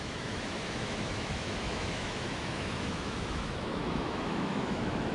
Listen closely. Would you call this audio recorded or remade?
remade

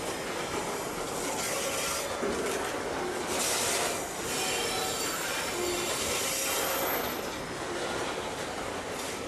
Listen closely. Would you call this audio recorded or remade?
recorded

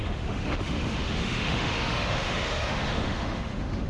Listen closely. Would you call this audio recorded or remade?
remade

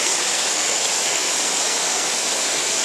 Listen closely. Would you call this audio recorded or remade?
remade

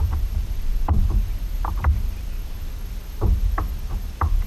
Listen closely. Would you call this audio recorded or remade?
remade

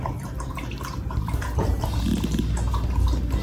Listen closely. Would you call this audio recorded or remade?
recorded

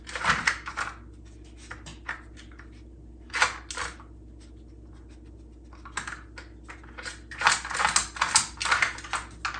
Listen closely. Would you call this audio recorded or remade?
recorded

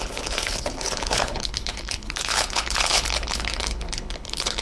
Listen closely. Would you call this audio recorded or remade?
remade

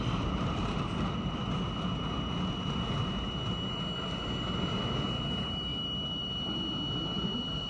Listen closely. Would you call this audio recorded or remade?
recorded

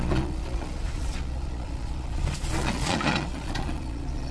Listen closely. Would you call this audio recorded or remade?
remade